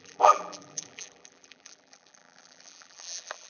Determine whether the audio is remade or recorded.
remade